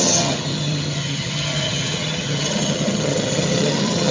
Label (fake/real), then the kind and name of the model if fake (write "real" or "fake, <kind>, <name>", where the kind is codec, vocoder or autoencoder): fake, vocoder, HiFi-GAN